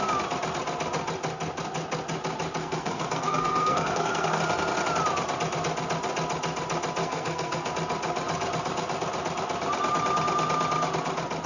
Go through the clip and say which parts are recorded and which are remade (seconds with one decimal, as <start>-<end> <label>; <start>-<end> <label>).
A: 0.0-2.6 recorded; 2.6-4.4 remade; 4.4-7.0 recorded; 7.0-7.7 remade; 7.7-11.5 recorded